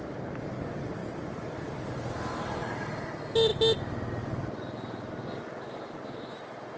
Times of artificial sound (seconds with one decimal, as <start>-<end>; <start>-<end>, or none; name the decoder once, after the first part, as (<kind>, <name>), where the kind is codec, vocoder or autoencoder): none